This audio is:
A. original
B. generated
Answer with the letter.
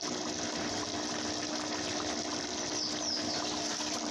A